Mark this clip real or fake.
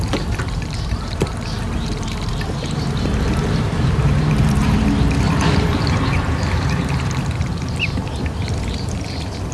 fake